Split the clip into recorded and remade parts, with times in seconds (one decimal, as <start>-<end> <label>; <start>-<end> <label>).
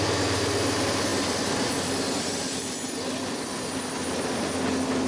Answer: 0.0-5.1 recorded